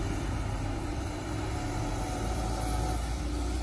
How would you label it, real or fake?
real